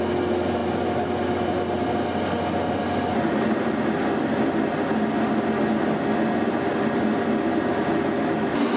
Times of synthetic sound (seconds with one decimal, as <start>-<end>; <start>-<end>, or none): none